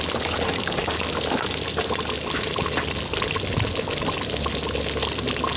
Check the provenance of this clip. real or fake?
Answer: real